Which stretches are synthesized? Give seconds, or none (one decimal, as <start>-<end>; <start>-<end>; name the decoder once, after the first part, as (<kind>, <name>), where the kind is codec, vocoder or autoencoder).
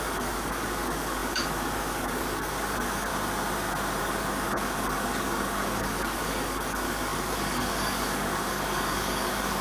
0.0-3.1 (codec, DAC); 4.0-9.6